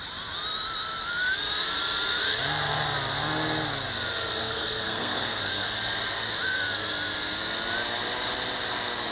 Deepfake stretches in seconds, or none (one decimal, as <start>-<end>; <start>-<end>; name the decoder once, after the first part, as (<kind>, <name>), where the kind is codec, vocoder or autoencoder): 4.4-5.4 (codec, SNAC)